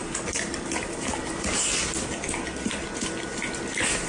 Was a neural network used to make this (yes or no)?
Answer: no